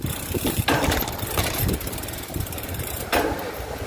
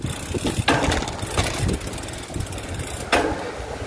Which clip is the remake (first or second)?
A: first